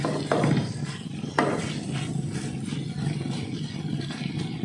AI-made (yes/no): no